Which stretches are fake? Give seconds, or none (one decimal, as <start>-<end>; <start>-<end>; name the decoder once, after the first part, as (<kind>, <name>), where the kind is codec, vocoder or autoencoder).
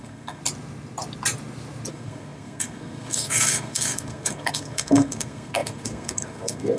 0.0-0.4 (codec, SNAC); 1.9-6.8